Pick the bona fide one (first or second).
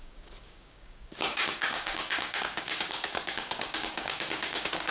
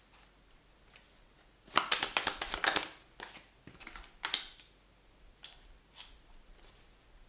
second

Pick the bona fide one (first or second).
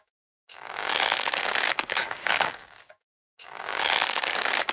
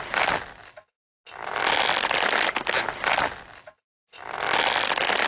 second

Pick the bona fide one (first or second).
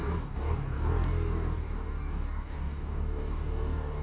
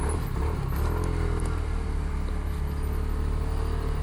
second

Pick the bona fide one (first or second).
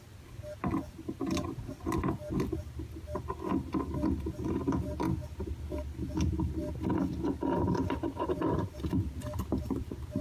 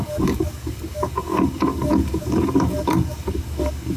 first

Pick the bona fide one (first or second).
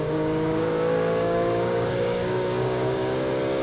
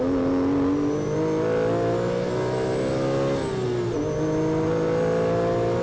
second